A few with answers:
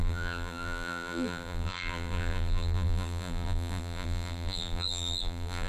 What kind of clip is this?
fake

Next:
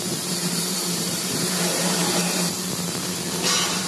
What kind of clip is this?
fake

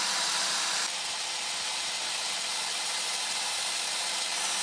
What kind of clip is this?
fake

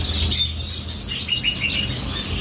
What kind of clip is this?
real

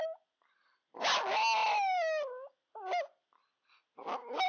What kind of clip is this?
real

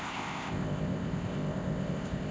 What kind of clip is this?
fake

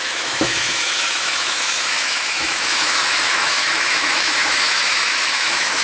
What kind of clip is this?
fake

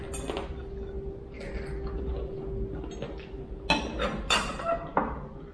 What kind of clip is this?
real